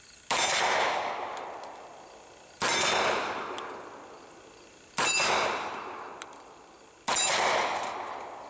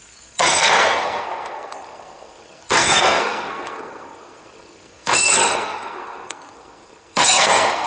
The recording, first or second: first